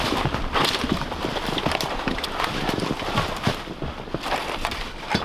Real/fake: fake